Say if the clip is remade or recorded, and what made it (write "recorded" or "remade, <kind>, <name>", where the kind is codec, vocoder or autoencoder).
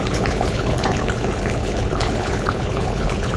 remade, codec, HILCodec